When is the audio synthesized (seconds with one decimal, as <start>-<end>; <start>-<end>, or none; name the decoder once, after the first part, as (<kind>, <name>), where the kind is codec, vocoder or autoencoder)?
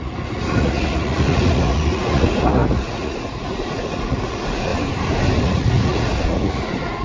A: 0.0-4.7 (vocoder, Vocos); 5.4-7.0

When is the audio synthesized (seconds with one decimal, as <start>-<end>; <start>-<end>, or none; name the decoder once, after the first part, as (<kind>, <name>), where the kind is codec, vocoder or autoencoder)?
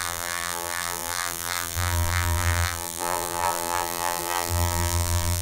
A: 0.0-5.4 (vocoder, BigVGAN v2)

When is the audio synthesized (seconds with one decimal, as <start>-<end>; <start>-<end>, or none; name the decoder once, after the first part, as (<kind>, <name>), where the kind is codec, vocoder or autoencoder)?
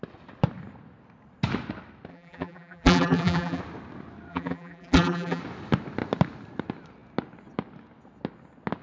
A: 2.1-3.6 (vocoder, BigVGAN v2); 4.3-5.4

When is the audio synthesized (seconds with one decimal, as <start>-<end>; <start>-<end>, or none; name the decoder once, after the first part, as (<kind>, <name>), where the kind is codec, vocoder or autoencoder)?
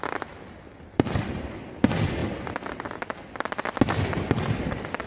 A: none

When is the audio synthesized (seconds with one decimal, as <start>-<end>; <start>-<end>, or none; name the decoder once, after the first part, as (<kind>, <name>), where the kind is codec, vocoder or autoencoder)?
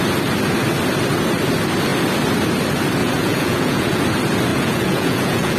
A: 3.0-4.0 (vocoder, Vocos); 4.5-5.6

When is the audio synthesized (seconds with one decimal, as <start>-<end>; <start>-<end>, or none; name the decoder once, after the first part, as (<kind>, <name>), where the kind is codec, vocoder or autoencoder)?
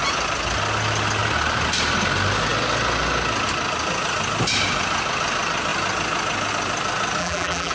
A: 7.2-7.7 (vocoder, BigVGAN v2)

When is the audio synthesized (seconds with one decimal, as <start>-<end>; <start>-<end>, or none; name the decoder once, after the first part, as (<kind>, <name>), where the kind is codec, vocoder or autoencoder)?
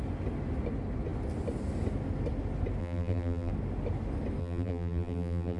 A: 2.8-3.5 (vocoder, BigVGAN v2); 4.4-5.6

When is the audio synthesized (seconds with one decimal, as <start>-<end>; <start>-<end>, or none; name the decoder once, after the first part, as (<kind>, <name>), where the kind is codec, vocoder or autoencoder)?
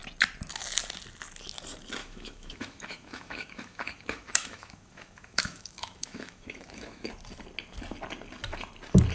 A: 2.0-7.1 (autoencoder, DAC-VAE)